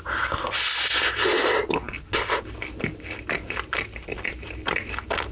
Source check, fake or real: real